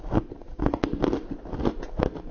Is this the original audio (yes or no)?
yes